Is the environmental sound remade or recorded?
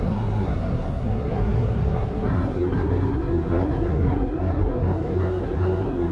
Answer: remade